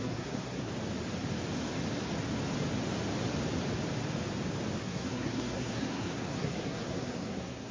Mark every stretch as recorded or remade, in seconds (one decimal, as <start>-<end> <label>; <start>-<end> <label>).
0.0-0.7 remade; 0.7-4.8 recorded; 4.8-7.7 remade